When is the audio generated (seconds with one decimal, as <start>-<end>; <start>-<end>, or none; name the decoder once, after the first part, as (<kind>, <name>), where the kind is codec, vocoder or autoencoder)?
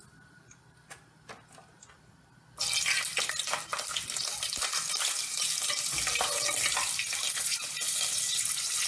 none